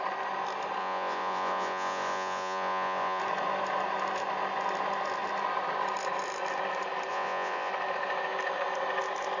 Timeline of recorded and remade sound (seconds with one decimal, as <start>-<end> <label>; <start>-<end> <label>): 0.0-0.8 recorded; 0.8-3.2 remade; 3.2-7.1 recorded; 7.1-7.7 remade; 7.7-9.4 recorded